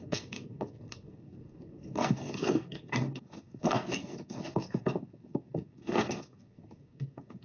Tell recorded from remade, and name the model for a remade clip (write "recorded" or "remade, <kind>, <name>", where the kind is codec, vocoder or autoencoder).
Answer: remade, codec, SNAC